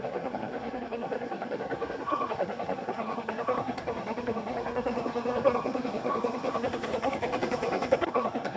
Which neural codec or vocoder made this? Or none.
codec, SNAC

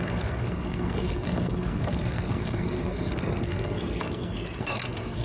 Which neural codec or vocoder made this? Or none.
codec, SNAC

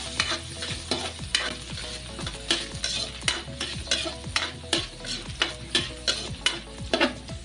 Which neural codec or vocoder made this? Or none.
none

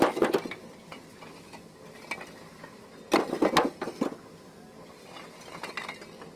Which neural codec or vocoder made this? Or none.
none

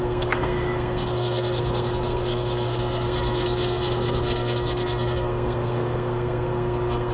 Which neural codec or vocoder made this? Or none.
codec, SNAC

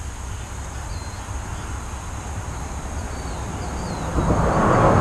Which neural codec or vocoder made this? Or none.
none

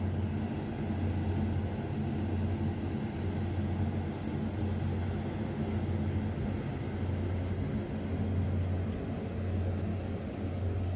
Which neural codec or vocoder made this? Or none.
none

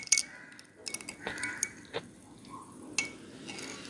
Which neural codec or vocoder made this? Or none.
none